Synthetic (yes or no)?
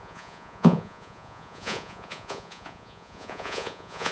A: yes